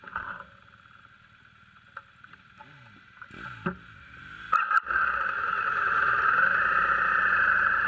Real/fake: real